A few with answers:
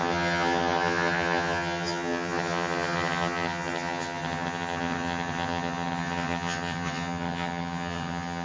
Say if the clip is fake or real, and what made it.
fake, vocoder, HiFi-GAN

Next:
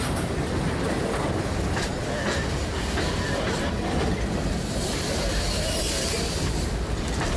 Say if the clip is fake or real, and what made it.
real